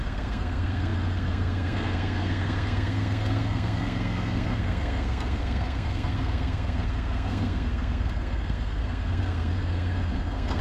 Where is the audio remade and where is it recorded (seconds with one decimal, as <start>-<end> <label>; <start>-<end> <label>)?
0.0-10.6 remade